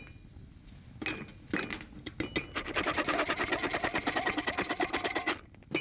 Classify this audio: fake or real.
real